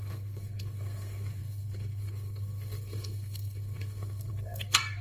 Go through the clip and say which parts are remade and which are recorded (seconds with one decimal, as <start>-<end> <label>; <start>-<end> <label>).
0.0-5.0 remade